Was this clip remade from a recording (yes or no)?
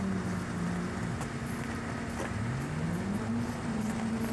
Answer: no